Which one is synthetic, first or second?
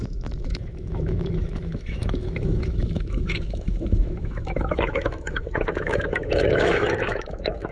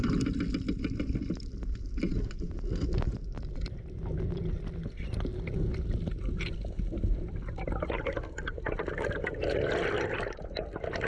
first